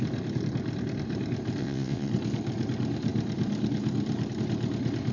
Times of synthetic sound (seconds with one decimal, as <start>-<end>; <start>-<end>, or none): 1.6-2.1